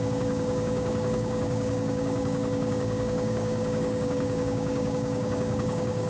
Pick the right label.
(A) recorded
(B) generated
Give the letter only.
B